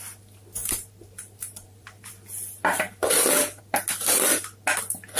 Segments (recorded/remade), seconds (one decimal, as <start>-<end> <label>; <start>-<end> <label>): 0.0-0.6 recorded; 0.6-2.1 remade; 2.1-5.2 recorded